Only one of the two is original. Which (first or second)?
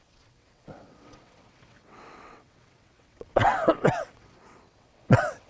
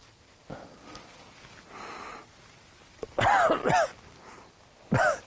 second